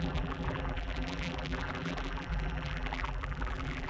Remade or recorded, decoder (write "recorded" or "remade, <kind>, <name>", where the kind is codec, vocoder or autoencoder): remade, vocoder, BigVGAN v2